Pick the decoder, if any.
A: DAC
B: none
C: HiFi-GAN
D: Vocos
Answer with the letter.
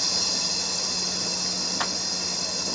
B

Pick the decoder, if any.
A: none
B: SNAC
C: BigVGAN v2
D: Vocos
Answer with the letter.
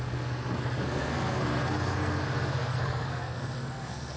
B